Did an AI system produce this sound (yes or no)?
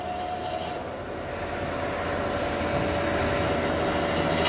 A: no